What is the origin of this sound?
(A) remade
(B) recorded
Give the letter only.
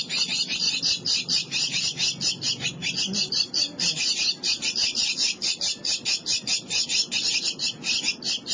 B